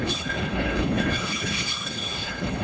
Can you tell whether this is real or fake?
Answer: fake